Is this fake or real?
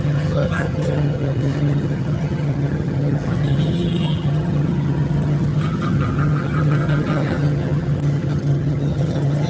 fake